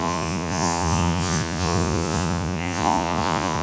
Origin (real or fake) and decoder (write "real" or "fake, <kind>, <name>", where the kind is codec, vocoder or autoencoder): fake, vocoder, Vocos